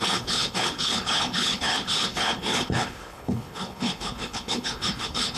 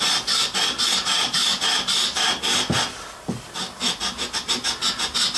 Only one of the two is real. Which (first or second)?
second